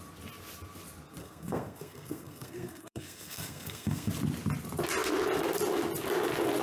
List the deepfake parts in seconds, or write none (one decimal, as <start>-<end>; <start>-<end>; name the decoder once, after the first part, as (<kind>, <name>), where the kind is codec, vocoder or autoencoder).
1.2-4.1 (codec, SNAC)